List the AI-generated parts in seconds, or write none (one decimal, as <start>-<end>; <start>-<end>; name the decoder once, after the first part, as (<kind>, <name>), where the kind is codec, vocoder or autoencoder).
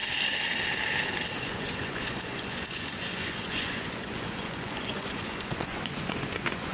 1.4-6.7 (vocoder, Vocos)